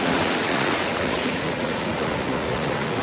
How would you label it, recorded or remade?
remade